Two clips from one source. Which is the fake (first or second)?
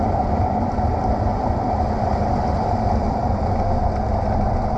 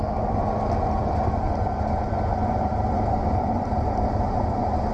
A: first